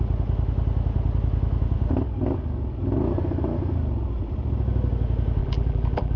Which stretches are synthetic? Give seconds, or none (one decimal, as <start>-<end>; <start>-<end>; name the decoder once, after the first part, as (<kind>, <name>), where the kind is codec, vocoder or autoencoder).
5.4-6.2 (vocoder, BigVGAN v2)